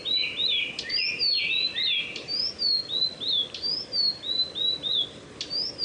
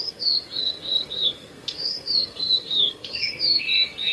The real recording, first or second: first